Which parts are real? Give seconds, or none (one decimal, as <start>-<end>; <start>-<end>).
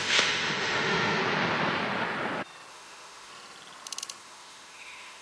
1.2-2.7; 3.3-4.2